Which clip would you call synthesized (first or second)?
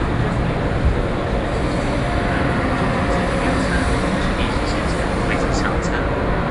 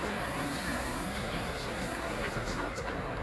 second